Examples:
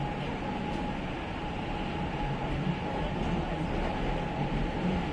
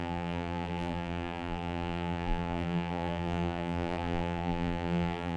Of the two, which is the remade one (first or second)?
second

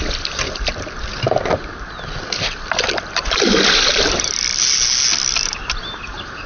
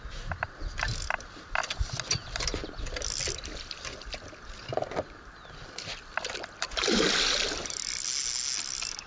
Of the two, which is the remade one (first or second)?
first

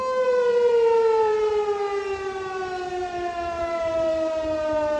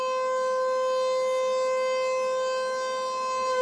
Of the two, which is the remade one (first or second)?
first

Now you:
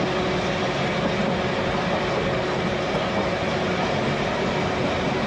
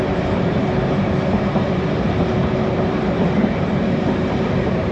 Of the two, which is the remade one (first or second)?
second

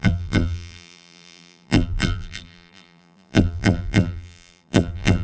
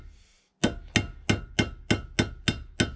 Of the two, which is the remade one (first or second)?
first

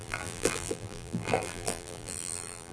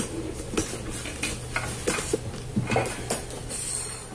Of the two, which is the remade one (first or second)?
first